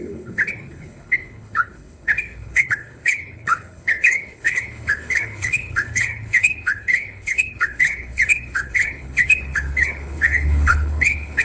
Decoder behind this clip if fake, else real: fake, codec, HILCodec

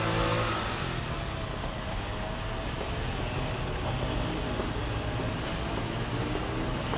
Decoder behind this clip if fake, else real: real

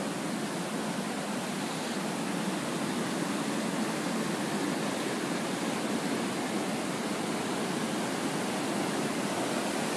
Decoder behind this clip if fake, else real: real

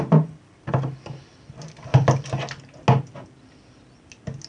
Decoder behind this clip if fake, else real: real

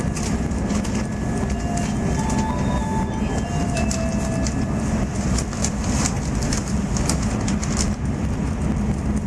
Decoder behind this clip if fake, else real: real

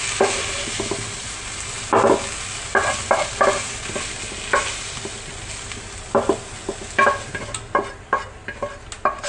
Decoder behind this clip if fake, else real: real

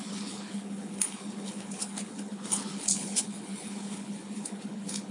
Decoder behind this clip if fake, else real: fake, codec, HILCodec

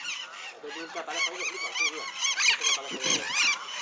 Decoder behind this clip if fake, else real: real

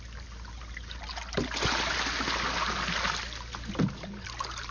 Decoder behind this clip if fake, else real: real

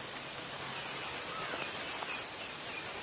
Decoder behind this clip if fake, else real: real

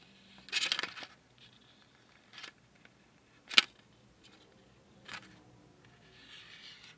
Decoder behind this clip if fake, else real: real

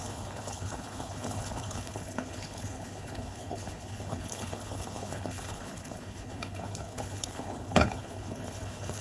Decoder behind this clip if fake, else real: fake, codec, HILCodec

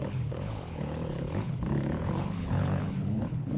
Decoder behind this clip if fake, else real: fake, codec, HILCodec